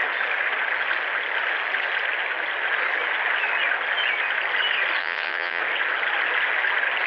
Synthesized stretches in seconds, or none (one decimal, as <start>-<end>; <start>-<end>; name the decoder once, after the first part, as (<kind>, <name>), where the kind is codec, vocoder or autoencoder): 5.0-5.6 (vocoder, WaveNeXt)